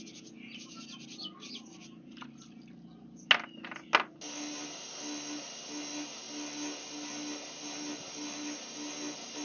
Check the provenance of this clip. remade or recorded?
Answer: recorded